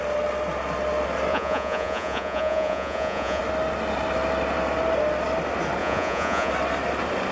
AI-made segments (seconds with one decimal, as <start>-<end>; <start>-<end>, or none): 1.3-3.4; 5.8-6.5